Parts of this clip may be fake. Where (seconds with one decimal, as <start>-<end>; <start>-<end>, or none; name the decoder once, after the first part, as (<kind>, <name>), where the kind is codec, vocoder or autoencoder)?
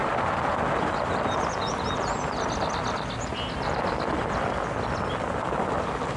none